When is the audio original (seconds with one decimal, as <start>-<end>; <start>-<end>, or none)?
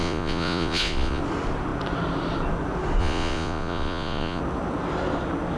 1.2-3.0; 4.4-5.6